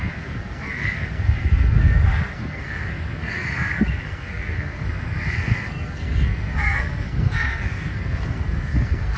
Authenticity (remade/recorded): remade